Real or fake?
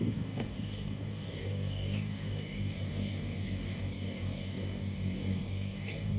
fake